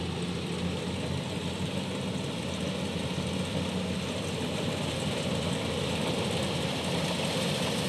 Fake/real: real